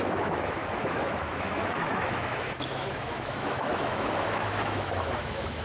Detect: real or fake fake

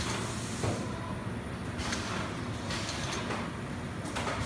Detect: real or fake real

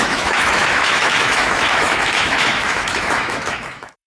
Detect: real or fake fake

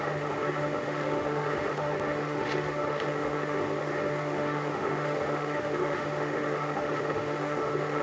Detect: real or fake fake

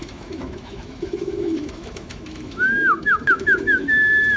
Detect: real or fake fake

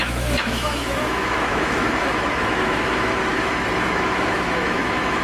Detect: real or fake fake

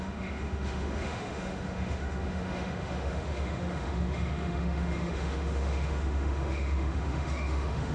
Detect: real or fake fake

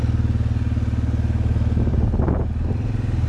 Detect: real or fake real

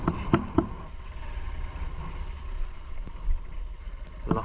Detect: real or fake real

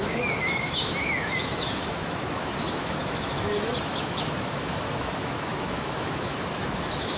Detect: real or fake fake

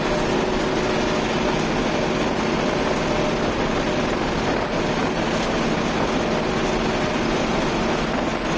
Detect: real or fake real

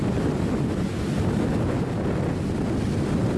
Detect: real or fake real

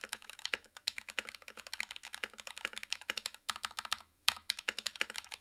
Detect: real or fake fake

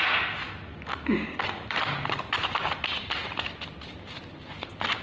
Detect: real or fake real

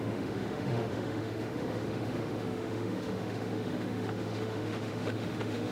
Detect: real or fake fake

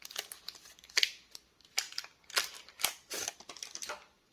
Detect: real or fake real